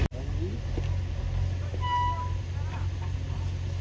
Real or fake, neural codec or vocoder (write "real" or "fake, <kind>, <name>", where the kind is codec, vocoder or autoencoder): real